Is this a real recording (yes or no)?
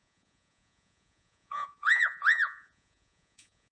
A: no